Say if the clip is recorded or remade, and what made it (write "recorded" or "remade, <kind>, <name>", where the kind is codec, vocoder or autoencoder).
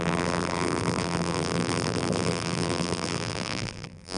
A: remade, vocoder, BigVGAN v2